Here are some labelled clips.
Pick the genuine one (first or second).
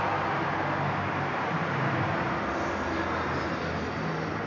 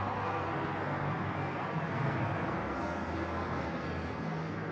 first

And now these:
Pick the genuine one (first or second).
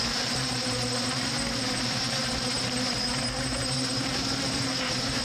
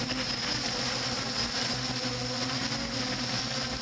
second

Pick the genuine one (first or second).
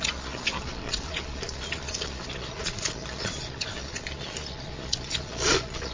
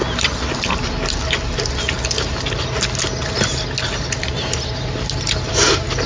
second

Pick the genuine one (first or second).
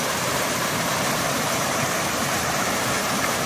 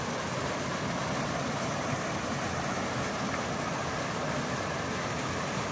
second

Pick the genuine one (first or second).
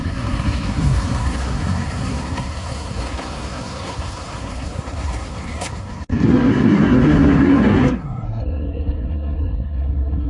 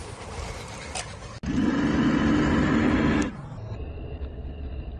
second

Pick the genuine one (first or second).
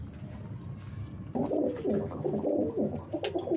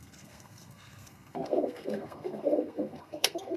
first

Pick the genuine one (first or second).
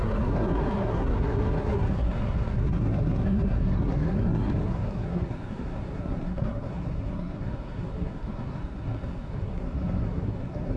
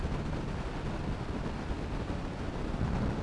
second